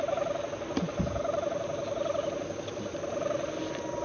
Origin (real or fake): real